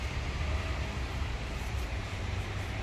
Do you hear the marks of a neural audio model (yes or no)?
yes